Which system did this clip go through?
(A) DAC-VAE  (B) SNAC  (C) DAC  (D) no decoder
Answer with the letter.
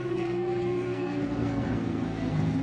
B